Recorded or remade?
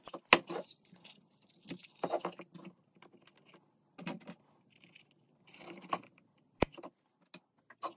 recorded